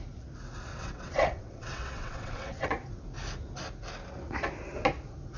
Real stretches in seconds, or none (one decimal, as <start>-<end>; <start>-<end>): 0.0-0.7; 2.7-5.4